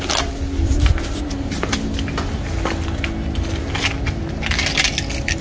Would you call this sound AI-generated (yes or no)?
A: no